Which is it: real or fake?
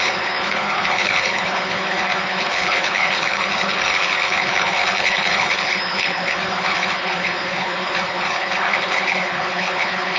fake